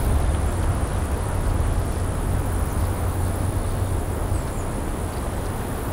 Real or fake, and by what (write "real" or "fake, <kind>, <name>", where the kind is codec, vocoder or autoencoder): real